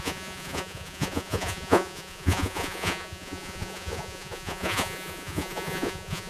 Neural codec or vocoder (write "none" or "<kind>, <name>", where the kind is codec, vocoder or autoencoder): vocoder, Vocos